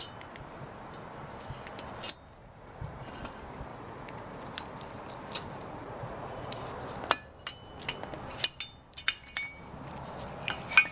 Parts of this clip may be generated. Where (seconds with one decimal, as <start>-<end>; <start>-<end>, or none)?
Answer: 2.4-3.1; 3.7-4.5; 5.8-6.6